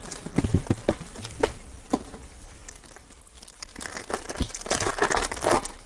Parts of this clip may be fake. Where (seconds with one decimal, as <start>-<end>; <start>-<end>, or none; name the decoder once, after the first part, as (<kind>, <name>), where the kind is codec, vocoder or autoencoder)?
none

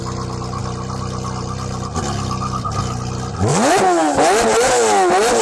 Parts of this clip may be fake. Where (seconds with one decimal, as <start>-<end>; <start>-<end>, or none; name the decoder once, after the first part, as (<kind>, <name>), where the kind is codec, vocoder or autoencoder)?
none

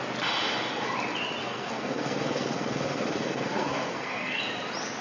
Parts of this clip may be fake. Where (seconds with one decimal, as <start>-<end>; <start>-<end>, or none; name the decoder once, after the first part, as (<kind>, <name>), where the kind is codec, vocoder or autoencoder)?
1.4-4.4 (codec, SNAC)

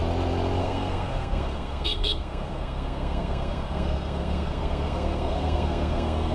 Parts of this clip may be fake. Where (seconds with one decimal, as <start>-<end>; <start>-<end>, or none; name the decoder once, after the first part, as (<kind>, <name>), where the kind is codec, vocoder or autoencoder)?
0.6-6.3 (codec, SNAC)

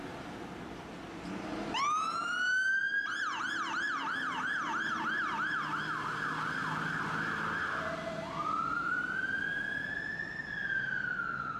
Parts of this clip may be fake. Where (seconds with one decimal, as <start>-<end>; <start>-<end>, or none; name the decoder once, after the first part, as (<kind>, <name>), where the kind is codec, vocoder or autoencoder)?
none

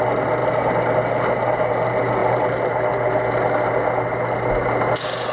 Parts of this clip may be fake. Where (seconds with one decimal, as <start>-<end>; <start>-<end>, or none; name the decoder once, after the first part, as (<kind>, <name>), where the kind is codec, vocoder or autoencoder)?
none

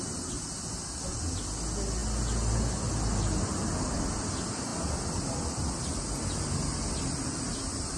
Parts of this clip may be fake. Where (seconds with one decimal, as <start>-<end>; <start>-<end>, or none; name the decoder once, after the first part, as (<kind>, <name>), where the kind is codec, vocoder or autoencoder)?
none

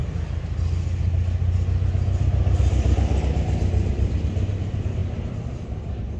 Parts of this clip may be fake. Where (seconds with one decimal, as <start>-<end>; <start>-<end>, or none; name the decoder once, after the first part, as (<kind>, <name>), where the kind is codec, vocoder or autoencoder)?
none